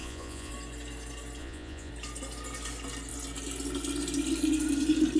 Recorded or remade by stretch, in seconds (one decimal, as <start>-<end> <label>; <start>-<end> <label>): 0.0-0.5 remade; 0.5-1.4 recorded; 1.4-1.9 remade; 1.9-5.2 recorded